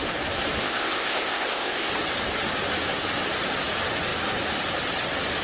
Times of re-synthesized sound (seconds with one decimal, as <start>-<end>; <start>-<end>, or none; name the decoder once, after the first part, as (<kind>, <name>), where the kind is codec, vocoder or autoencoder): 0.6-1.9 (codec, ZipCodec)